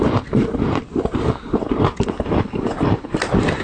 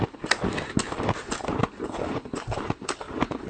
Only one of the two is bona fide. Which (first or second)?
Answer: second